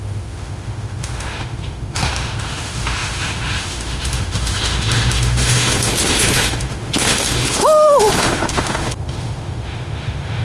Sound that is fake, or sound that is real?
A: fake